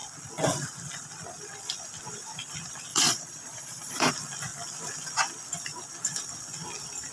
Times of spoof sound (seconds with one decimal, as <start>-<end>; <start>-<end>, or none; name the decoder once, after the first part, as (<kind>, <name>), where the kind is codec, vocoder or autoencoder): 2.9-4.1 (vocoder, Vocos)